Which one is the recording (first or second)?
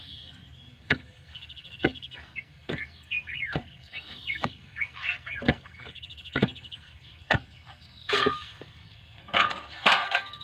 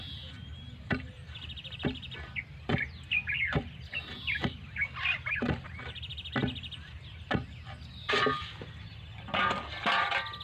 second